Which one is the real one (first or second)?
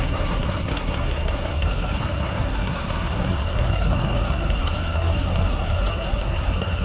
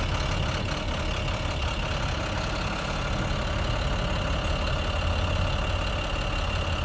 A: second